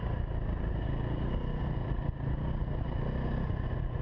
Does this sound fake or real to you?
real